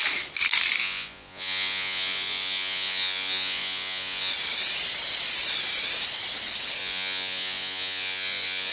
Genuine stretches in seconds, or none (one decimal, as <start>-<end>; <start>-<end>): 0.0-0.8; 4.3-6.8